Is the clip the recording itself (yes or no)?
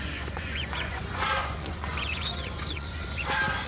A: no